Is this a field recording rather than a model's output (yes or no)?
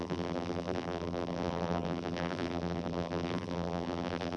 no